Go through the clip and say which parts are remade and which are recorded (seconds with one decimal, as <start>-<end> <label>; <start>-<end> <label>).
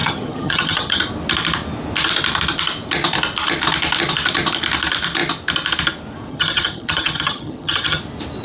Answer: 0.0-1.0 remade; 1.0-6.3 recorded; 6.3-8.0 remade; 8.0-8.4 recorded